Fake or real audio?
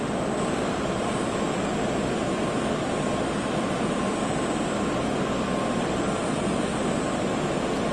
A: real